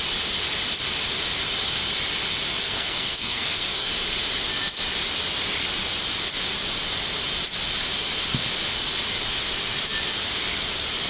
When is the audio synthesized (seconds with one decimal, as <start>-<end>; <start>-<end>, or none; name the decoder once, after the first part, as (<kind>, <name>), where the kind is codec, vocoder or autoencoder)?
2.6-3.9 (codec, SNAC)